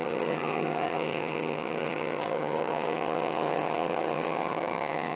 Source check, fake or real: fake